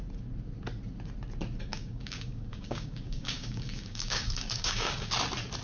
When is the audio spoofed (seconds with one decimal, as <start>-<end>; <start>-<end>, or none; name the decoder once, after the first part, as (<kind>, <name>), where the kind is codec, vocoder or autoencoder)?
1.7-5.1 (codec, DAC)